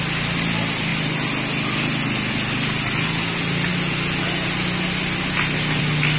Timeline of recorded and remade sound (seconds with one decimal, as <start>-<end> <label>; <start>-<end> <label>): 0.0-6.2 recorded